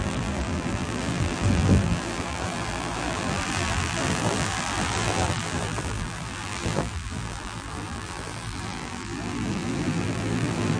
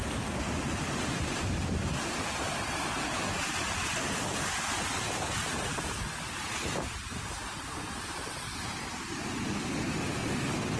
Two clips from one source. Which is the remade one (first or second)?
first